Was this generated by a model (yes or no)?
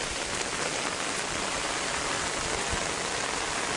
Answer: no